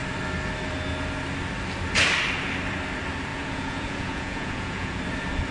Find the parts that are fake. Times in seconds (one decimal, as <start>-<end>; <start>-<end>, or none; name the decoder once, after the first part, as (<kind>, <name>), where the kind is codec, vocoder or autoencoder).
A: 3.3-5.0 (vocoder, Vocos)